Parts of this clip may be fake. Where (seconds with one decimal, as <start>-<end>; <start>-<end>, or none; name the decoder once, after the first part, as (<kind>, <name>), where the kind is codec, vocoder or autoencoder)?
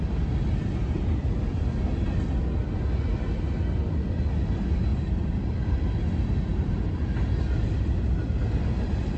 4.9-6.1 (vocoder, BigVGAN v2)